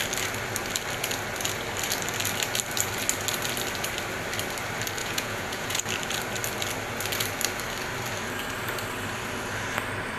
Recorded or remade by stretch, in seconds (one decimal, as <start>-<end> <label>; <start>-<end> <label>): 0.0-5.0 recorded; 5.0-5.8 remade; 5.8-10.2 recorded